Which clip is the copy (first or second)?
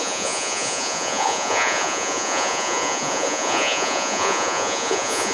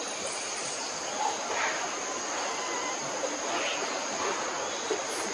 first